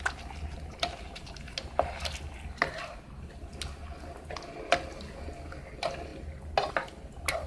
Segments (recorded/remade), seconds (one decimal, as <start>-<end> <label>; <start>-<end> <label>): 0.0-7.5 recorded